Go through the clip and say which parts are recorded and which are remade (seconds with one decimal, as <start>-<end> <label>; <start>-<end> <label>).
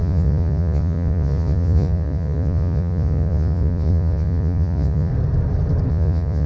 0.0-5.1 remade; 5.1-5.9 recorded; 5.9-6.5 remade